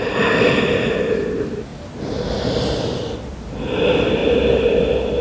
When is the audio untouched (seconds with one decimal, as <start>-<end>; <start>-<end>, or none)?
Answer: 0.0-5.2